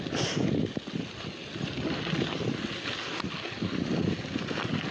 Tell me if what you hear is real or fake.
real